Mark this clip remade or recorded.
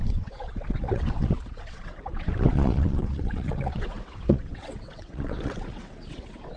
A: remade